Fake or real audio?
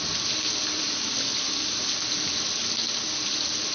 real